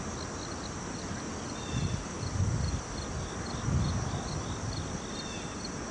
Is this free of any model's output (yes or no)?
yes